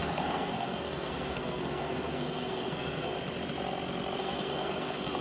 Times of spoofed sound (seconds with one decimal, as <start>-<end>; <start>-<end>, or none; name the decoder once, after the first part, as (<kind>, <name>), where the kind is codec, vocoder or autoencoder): 0.0-3.1 (codec, SNAC); 4.2-5.2